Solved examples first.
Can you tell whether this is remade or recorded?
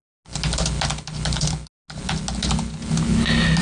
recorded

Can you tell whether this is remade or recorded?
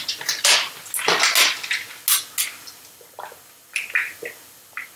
recorded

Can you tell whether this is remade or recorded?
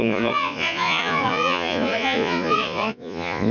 remade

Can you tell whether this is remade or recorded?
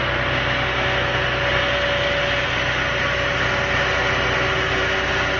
recorded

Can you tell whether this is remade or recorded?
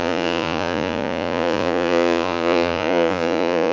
remade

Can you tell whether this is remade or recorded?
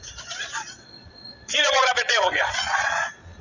remade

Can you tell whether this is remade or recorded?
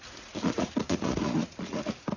remade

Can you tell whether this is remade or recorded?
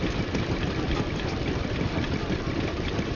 recorded